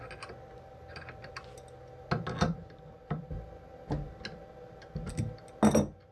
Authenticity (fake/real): real